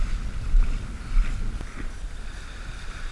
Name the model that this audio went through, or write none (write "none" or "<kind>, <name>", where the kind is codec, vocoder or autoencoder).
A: none